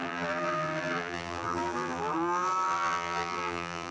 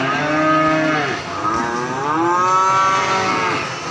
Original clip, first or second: second